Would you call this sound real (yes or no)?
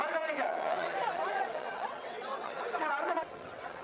no